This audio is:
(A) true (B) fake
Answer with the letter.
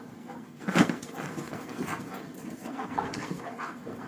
B